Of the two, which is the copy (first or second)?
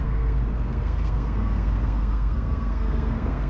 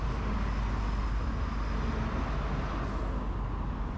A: first